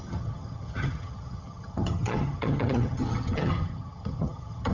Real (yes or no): no